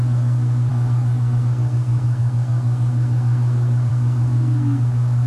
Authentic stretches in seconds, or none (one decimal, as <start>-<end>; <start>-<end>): none